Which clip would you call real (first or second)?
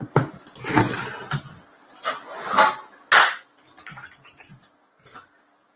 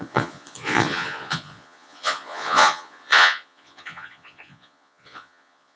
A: first